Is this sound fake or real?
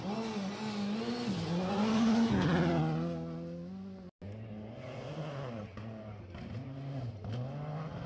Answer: real